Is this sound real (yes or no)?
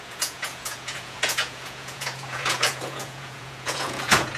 no